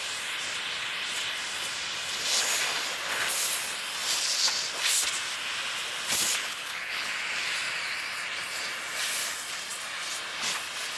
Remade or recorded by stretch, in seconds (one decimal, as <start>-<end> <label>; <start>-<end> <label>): 0.0-6.3 recorded; 6.3-7.1 remade; 7.1-11.0 recorded